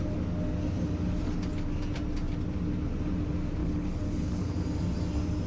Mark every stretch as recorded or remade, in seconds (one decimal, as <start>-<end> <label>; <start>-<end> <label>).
0.0-3.6 recorded; 3.6-4.5 remade; 4.5-5.5 recorded